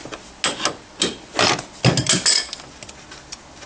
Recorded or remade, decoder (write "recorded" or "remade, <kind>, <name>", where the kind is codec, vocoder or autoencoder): recorded